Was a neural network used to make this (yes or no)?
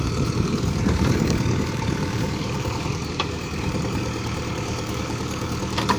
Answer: yes